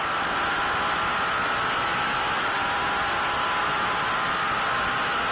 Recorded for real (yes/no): yes